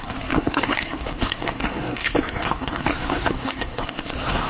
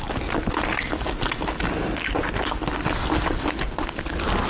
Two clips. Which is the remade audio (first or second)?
first